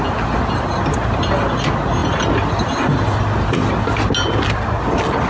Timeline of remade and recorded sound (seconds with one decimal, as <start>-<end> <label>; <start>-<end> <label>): 0.0-5.3 recorded